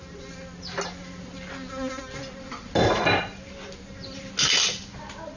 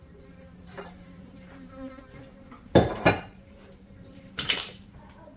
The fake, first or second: second